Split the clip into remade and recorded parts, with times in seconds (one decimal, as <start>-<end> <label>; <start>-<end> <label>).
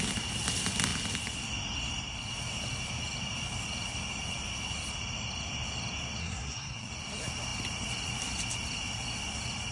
0.0-6.2 recorded; 6.2-6.9 remade; 6.9-9.7 recorded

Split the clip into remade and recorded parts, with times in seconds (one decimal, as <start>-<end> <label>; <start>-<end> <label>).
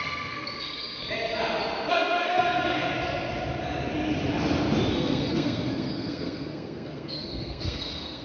0.0-1.0 remade; 1.0-1.9 recorded; 1.9-2.9 remade; 2.9-4.9 recorded; 4.9-8.2 remade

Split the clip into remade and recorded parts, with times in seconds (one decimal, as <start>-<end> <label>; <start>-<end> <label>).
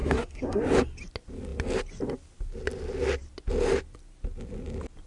0.0-0.6 remade; 0.6-5.1 recorded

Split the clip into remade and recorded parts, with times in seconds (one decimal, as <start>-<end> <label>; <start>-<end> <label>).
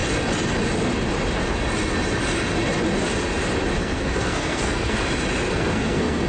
0.0-3.8 recorded; 3.8-5.0 remade; 5.0-5.5 recorded; 5.5-6.3 remade